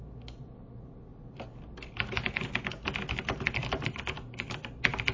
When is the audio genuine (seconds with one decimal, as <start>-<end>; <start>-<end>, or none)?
0.0-5.1